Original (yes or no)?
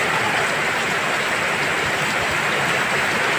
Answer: yes